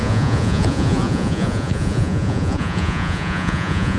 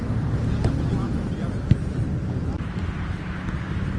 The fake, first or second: first